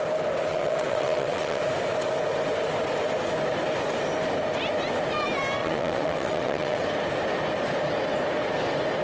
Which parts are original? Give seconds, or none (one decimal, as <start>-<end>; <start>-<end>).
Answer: 0.0-0.5; 1.6-5.6; 6.8-9.0